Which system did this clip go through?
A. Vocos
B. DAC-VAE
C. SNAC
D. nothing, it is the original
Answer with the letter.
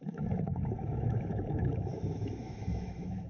B